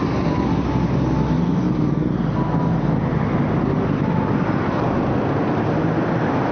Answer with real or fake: real